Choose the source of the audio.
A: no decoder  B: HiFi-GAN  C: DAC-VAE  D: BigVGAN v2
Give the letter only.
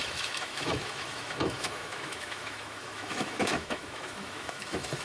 C